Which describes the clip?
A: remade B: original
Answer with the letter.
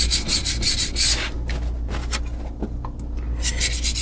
B